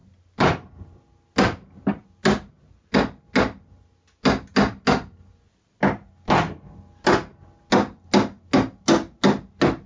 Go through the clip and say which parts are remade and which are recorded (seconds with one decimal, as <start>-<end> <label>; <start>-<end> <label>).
0.0-9.9 recorded